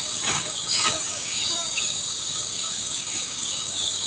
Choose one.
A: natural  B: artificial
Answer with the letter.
B